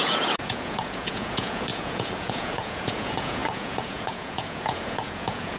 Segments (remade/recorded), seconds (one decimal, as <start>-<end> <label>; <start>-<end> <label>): 0.0-5.6 remade